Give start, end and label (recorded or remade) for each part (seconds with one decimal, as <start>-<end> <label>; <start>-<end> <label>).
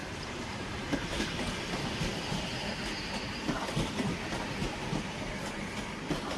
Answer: 0.0-1.2 remade; 1.2-4.6 recorded; 4.6-5.3 remade; 5.3-6.4 recorded